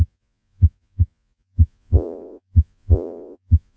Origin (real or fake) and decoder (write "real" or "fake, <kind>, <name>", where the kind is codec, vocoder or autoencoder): fake, vocoder, Vocos